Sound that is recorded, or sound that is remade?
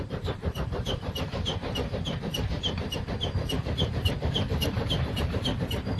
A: remade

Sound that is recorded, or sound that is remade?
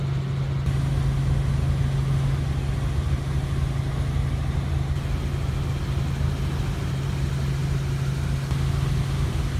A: recorded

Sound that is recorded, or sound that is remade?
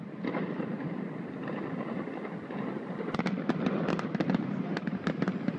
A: remade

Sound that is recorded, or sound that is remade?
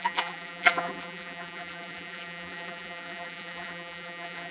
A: remade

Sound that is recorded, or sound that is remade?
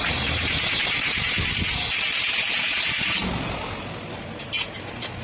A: recorded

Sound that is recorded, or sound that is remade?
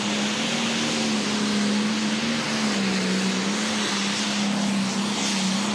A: recorded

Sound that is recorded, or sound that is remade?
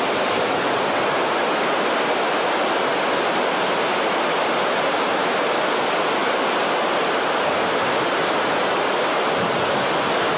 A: recorded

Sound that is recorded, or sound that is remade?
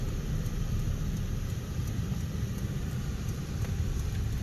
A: remade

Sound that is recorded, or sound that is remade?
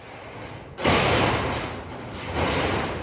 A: recorded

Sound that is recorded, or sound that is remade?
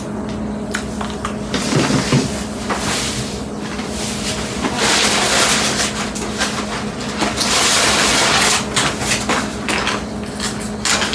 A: recorded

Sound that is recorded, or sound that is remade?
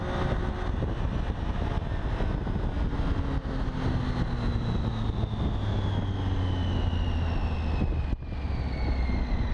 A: recorded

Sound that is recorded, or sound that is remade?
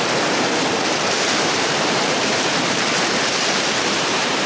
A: remade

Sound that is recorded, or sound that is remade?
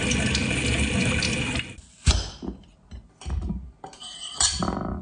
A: recorded